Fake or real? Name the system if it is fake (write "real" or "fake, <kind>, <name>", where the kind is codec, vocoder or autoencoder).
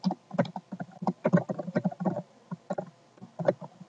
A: real